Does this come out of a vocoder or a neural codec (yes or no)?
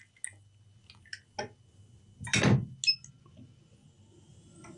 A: no